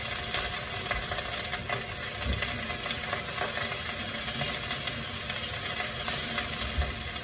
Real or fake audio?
real